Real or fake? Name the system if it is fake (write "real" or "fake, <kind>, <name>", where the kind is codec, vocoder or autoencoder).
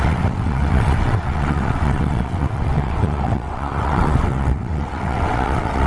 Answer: fake, vocoder, WaveNeXt